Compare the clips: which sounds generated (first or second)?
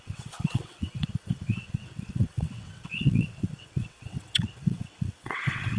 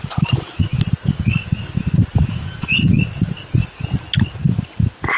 first